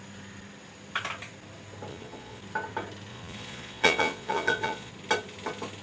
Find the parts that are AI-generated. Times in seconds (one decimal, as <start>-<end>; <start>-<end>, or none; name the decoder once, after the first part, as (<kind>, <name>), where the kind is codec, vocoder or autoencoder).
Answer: 1.9-2.4 (vocoder, Vocos); 3.1-4.9